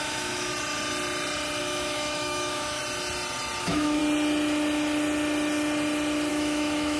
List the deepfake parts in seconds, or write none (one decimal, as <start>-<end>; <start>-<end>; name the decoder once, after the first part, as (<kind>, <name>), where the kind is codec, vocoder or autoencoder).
0.0-0.5 (autoencoder, DAC-VAE); 1.6-2.8; 3.6-4.0; 6.3-7.0